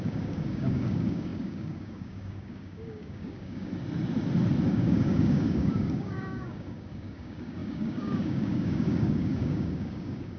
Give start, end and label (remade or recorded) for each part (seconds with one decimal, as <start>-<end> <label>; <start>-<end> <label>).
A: 0.0-3.7 remade; 3.7-4.7 recorded; 4.7-10.4 remade